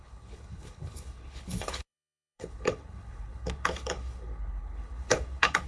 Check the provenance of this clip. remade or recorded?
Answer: remade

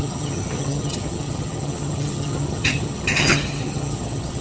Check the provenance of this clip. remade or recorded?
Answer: remade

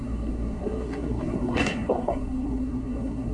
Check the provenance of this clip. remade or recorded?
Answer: remade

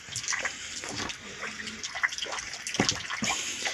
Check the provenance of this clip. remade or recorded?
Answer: recorded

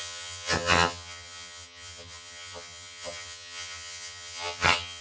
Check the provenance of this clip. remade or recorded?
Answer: remade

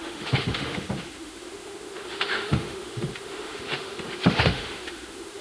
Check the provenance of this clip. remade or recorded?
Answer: remade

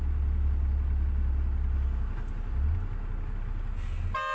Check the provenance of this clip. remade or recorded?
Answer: recorded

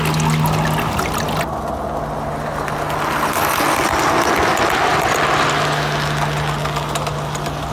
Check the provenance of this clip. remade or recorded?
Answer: recorded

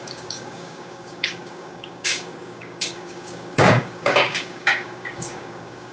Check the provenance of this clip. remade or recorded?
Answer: remade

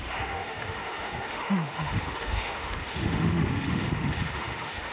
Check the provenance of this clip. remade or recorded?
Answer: remade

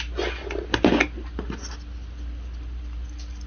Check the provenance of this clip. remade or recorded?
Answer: recorded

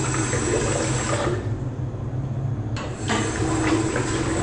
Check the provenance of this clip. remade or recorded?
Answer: recorded